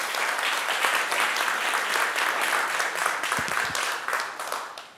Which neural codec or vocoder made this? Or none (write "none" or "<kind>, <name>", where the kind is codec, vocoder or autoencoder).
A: none